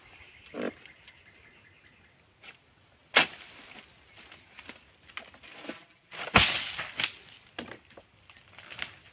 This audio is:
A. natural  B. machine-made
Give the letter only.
A